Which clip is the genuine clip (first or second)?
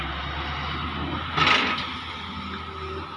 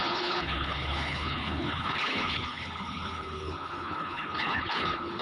first